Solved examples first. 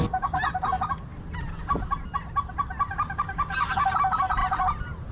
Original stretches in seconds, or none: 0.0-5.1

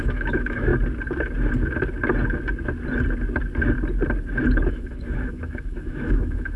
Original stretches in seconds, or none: 0.7-4.7

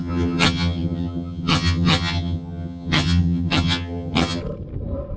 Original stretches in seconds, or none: 4.4-5.2

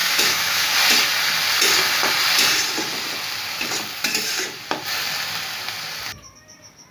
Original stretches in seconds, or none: 0.7-6.9

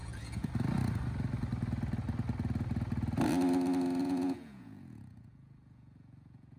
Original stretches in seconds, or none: 0.5-4.0

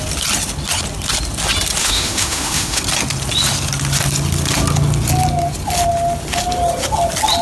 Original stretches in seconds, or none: 0.0-1.8; 2.8-7.4

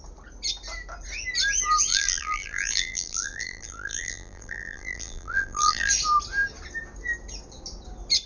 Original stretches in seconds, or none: 0.0-1.9; 5.9-8.3

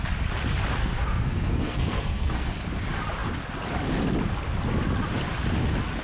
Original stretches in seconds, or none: 0.0-0.8; 2.5-6.0